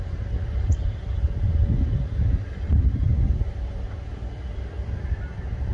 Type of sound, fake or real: real